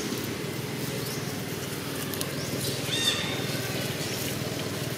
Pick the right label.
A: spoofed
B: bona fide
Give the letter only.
B